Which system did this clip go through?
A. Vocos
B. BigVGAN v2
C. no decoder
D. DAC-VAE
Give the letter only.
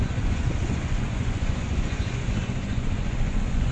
A